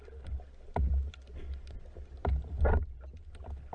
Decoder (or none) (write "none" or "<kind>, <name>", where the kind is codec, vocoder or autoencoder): none